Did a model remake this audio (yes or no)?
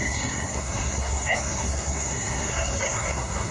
yes